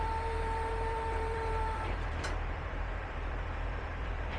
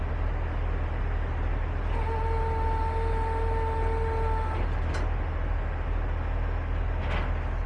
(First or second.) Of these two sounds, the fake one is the first